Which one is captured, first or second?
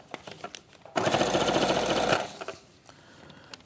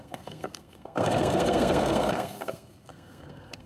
first